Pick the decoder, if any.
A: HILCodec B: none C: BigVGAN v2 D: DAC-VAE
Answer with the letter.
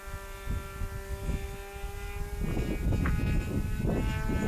B